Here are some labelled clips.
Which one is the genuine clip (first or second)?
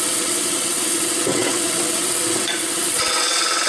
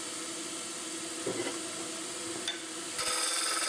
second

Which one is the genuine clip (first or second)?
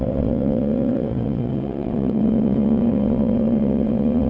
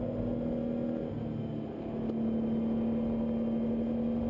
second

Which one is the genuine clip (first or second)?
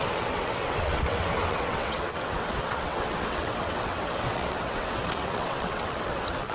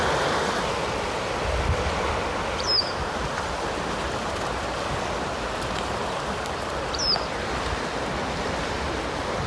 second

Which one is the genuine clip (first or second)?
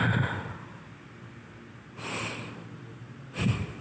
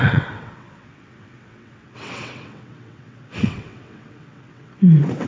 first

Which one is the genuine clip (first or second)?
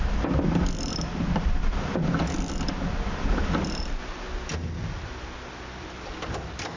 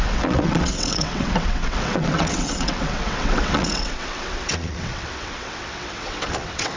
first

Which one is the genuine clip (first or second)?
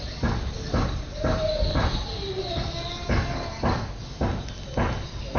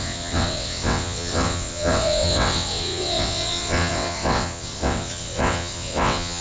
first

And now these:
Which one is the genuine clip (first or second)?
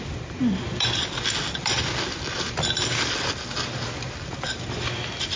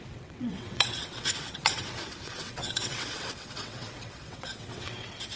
first